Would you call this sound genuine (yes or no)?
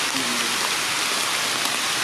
yes